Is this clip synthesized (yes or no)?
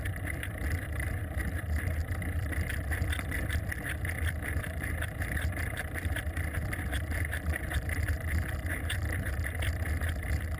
yes